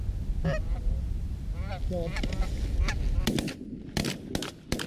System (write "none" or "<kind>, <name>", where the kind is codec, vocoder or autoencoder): none